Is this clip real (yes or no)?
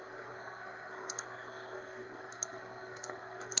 no